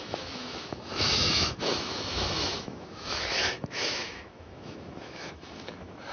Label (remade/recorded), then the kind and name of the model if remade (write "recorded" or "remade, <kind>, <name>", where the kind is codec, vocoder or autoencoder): remade, autoencoder, DAC-VAE